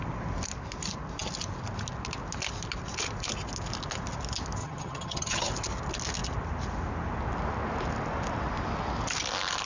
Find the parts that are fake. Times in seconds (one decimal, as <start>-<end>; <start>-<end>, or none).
4.6-5.5